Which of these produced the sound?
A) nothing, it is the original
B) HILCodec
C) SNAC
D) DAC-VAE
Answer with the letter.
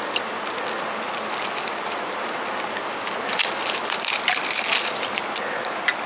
A